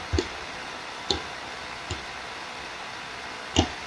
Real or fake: real